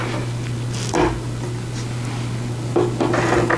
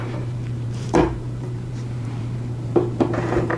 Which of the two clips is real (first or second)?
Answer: first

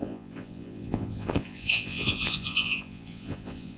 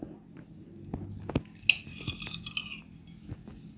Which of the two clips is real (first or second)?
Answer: second